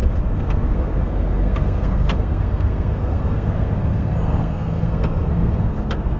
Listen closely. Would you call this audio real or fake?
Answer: fake